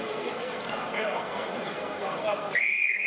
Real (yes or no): no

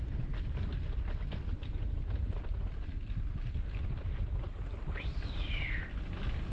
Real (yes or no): yes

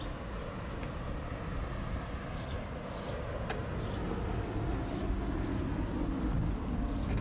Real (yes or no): yes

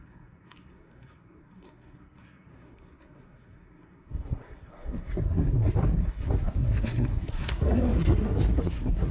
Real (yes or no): no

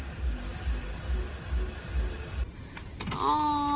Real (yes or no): yes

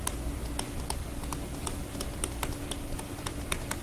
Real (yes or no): yes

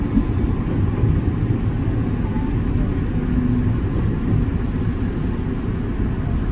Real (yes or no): yes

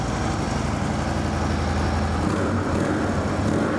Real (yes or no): yes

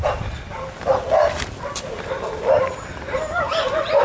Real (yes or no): yes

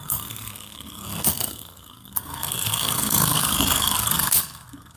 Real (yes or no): no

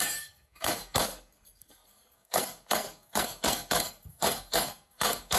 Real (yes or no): no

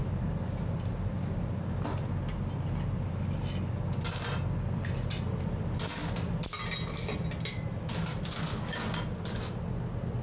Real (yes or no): yes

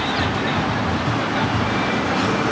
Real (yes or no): yes